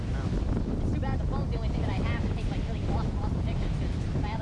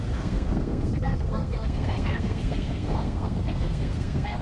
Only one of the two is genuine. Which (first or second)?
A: first